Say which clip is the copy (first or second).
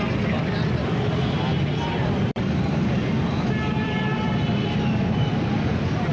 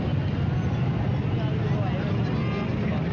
first